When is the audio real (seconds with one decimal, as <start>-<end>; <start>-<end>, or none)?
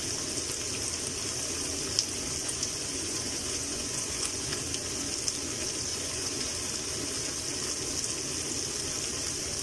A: 0.0-2.4; 4.6-5.9; 6.5-9.6